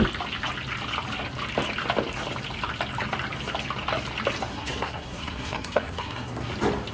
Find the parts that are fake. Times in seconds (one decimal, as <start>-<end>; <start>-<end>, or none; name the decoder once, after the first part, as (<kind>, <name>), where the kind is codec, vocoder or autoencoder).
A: 4.5-6.5 (codec, SNAC)